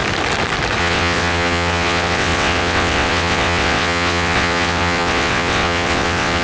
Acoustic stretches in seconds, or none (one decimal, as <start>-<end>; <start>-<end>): 0.0-0.8